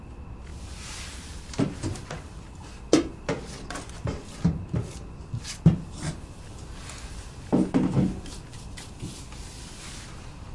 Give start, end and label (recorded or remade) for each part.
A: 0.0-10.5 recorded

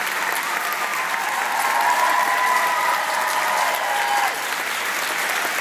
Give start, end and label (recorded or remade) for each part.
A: 0.0-5.6 recorded